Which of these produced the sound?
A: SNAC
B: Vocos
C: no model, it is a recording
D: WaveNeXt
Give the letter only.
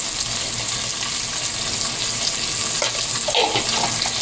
C